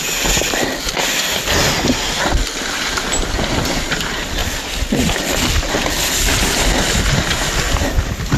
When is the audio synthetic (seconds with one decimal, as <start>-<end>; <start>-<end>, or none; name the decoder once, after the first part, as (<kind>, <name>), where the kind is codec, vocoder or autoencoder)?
none